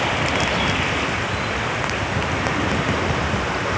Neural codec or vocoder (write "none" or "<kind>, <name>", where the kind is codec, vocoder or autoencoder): none